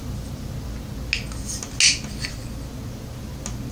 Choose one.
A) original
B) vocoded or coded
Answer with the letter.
A